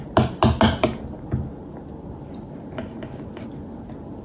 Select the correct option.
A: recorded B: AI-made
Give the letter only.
A